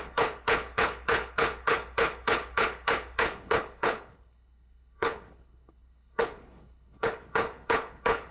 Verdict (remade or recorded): remade